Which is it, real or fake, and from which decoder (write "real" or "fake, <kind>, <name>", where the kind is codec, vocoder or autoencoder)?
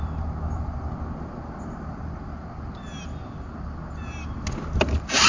real